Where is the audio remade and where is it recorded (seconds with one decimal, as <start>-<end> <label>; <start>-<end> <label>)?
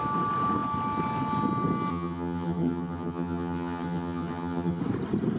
0.0-1.9 recorded; 1.9-4.8 remade; 4.8-5.4 recorded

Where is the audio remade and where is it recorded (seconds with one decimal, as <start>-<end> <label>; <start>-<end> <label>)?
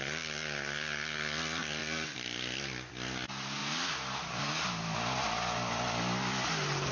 0.0-6.9 recorded